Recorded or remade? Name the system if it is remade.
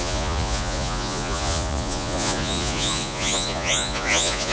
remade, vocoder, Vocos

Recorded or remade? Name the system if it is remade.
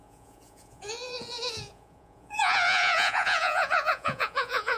remade, vocoder, Vocos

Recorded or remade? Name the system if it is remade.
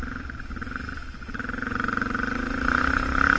recorded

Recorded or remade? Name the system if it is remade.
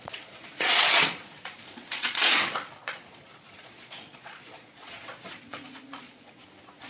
remade, vocoder, Vocos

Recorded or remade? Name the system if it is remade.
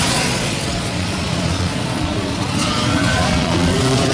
remade, vocoder, Vocos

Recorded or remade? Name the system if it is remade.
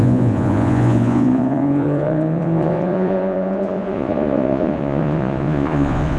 remade, vocoder, Vocos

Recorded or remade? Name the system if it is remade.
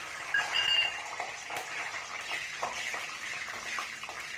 recorded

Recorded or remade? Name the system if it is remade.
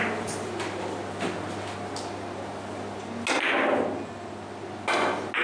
recorded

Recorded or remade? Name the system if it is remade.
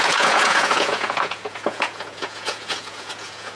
remade, vocoder, Vocos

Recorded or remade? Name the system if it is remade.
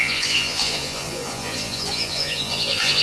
remade, vocoder, Vocos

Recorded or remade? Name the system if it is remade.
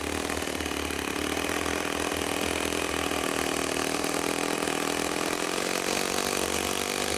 recorded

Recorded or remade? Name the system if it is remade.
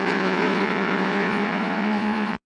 remade, vocoder, Vocos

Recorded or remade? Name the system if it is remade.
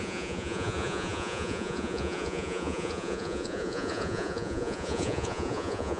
remade, vocoder, Vocos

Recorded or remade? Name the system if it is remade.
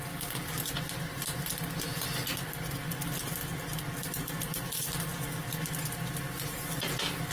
recorded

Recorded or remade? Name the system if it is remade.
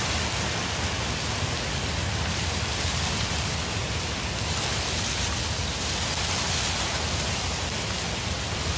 recorded